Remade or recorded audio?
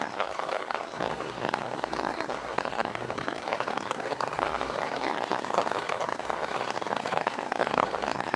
remade